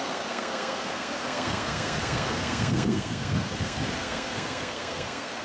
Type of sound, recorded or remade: remade